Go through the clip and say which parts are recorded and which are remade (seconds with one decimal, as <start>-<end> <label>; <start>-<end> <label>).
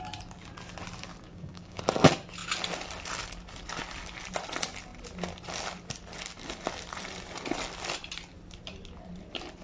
0.0-1.3 recorded; 1.3-1.8 remade; 1.8-9.6 recorded